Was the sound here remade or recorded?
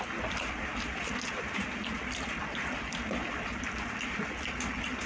recorded